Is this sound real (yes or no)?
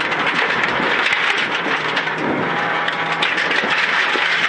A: yes